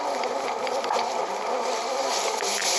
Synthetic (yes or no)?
no